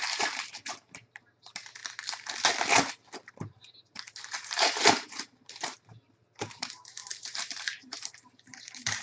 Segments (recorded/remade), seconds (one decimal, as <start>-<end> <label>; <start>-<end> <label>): 0.0-1.8 remade; 1.8-3.3 recorded; 3.3-9.0 remade